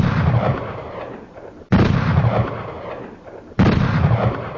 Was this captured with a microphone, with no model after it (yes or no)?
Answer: no